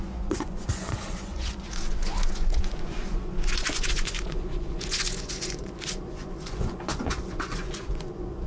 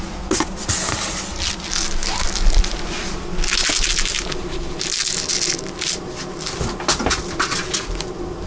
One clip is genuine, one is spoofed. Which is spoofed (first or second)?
first